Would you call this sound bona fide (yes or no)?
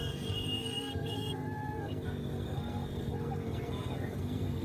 no